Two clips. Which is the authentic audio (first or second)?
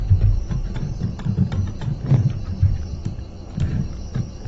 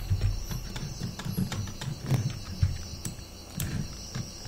second